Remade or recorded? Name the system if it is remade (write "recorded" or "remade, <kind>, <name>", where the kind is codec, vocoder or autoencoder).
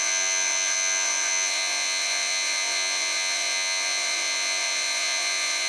remade, vocoder, Vocos